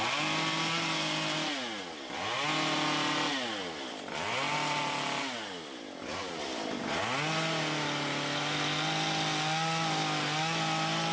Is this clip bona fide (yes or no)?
yes